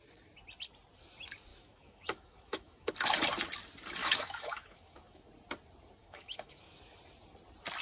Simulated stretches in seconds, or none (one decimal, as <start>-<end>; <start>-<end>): 1.5-2.9; 4.0-5.2; 6.0-6.8